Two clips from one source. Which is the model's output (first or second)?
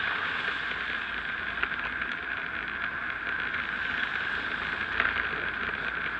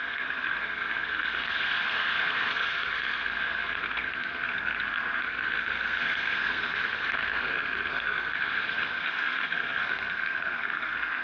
second